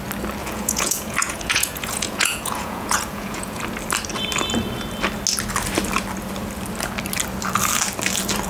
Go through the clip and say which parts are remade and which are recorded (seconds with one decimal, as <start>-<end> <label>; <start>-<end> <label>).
0.0-0.4 recorded; 0.4-3.6 remade; 3.6-8.5 recorded